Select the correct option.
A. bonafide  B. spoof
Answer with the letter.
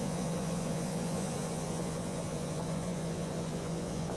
B